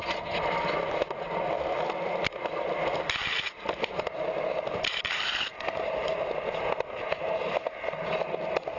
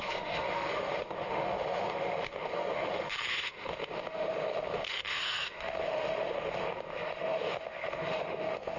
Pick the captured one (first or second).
first